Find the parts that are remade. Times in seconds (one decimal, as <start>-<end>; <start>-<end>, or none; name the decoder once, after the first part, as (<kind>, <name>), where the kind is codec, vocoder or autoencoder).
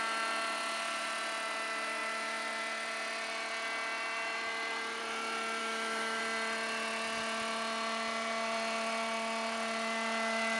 5.6-6.2 (autoencoder, DAC-VAE)